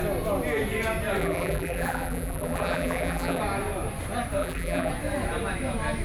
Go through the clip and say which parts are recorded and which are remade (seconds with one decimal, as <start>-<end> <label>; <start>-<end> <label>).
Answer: 0.0-1.2 recorded; 1.2-3.4 remade; 3.4-4.4 recorded; 4.4-4.9 remade; 4.9-6.0 recorded